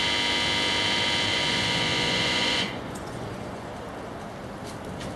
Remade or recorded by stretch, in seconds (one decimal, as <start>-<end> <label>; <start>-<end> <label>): 0.0-1.3 recorded; 1.3-3.7 remade; 3.7-5.2 recorded